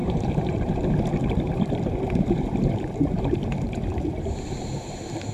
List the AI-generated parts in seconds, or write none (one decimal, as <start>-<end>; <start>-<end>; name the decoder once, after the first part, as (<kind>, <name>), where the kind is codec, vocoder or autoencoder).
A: 0.0-5.3 (vocoder, BigVGAN v2)